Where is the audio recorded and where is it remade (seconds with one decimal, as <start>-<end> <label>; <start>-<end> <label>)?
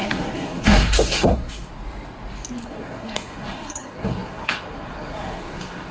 0.0-1.7 remade; 1.7-2.6 recorded; 2.6-5.9 remade